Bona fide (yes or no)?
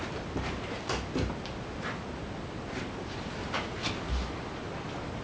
yes